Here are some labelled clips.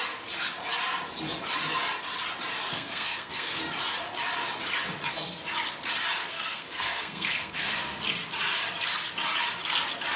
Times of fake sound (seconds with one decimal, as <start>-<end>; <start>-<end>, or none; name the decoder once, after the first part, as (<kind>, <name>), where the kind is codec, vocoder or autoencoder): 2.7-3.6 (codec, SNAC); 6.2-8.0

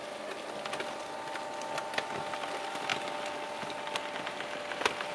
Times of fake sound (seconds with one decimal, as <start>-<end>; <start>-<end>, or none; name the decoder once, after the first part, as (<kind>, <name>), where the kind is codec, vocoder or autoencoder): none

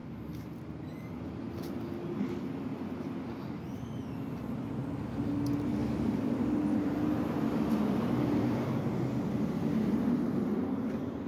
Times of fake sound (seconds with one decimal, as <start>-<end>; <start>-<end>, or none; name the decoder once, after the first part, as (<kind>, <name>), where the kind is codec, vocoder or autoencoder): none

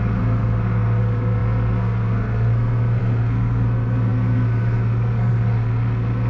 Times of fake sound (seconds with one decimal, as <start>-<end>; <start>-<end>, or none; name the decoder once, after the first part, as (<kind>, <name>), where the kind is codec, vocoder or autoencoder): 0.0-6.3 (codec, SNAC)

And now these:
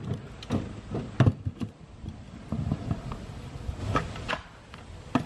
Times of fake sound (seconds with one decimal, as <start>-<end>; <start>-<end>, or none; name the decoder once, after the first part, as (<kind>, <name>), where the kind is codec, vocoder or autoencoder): none

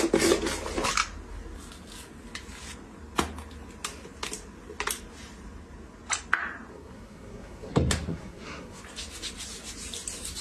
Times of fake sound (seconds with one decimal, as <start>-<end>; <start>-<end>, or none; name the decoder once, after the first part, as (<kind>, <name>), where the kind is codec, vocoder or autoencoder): 6.7-8.8 (codec, SNAC)

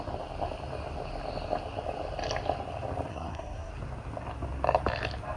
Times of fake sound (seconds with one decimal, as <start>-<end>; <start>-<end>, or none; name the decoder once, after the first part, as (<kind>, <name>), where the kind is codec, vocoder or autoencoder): 3.1-3.7 (codec, SNAC)

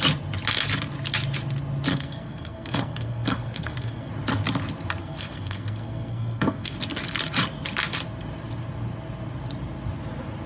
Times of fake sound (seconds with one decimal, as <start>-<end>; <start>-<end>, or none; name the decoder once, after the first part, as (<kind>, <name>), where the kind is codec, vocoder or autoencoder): 1.9-4.1 (codec, SNAC); 5.0-6.8